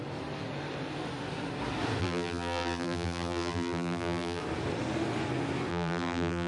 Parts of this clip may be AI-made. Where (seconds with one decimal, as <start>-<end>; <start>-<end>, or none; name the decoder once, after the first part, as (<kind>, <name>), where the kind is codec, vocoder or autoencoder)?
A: 2.0-4.4 (vocoder, BigVGAN v2); 5.7-6.5